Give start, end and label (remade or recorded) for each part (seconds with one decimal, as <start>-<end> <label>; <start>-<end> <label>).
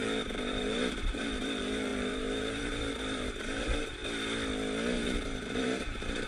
0.0-4.0 remade; 4.0-4.9 recorded; 4.9-6.3 remade